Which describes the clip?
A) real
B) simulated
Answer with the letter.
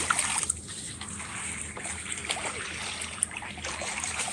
A